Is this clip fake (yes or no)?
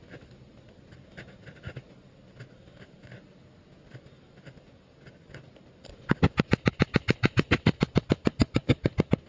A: no